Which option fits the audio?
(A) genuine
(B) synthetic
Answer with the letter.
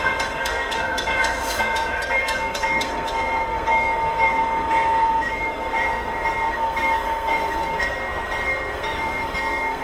B